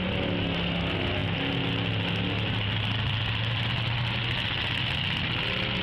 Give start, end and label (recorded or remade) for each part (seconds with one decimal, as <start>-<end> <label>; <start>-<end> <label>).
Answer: 0.0-5.8 recorded